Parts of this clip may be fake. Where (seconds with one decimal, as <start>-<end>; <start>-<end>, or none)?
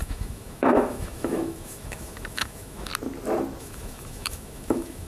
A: 0.0-2.9; 3.6-5.1